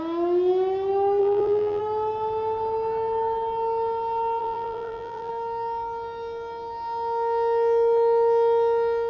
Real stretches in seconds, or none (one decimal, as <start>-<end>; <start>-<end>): 0.0-1.2; 1.8-4.4; 5.3-9.1